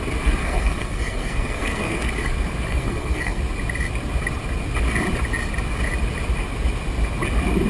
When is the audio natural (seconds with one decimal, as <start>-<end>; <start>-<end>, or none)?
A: 0.0-0.4; 2.1-2.7; 3.4-7.7